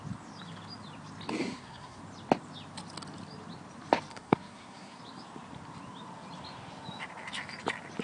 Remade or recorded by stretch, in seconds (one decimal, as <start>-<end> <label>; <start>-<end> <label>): 0.0-1.4 recorded; 1.4-2.0 remade; 2.0-4.1 recorded; 4.1-5.0 remade; 5.0-8.0 recorded